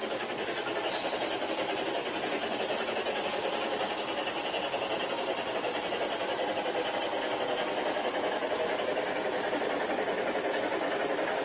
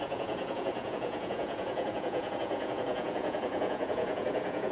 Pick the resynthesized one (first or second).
second